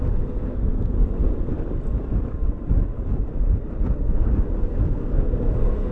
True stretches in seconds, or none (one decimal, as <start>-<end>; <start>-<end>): 1.0-4.5